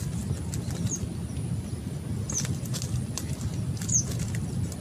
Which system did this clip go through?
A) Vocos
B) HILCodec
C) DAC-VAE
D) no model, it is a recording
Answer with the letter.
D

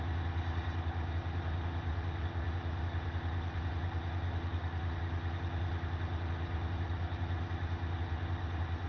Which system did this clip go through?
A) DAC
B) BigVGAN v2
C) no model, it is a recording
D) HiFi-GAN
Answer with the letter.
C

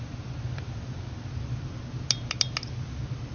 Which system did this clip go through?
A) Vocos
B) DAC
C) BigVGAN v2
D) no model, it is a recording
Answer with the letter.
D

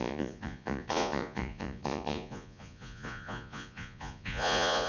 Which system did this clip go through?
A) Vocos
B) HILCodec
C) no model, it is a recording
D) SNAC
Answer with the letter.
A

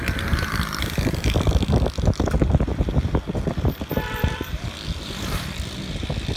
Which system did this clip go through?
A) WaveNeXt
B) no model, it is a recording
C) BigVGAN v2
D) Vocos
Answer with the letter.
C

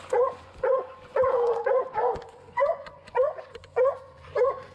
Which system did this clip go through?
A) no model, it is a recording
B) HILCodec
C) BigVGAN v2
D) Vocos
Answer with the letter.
D